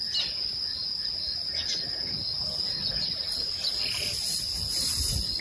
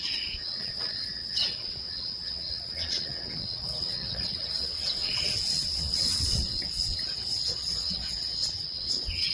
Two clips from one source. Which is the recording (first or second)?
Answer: first